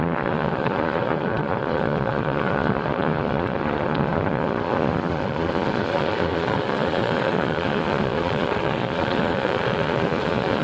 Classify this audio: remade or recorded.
remade